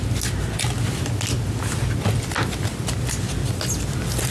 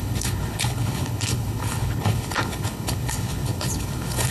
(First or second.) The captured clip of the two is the first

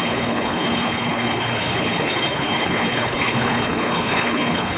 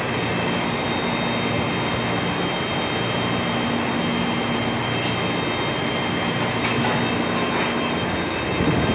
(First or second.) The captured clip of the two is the second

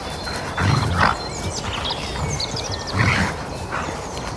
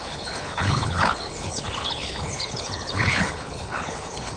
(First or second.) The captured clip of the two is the first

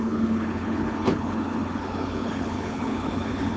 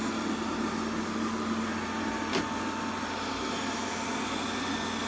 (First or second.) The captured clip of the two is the second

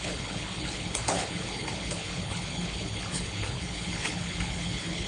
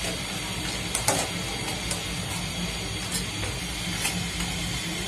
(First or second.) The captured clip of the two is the second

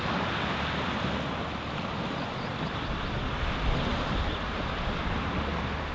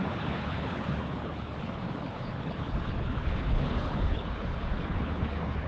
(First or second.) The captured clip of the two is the first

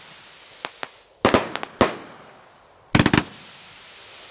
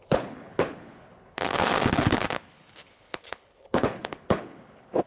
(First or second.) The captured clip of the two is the first